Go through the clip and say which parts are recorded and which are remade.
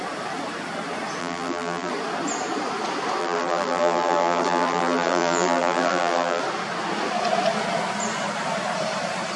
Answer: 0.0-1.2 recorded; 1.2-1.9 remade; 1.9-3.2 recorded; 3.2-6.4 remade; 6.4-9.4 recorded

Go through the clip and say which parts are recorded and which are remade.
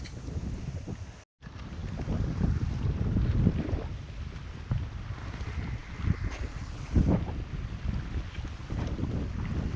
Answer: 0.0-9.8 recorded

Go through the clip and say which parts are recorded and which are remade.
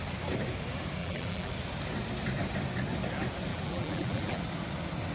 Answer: 0.0-1.0 recorded; 1.0-1.5 remade; 1.5-3.5 recorded; 3.5-4.4 remade; 4.4-5.1 recorded